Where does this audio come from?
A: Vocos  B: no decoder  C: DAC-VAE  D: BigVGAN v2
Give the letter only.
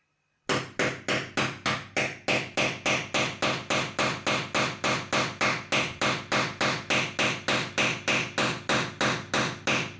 B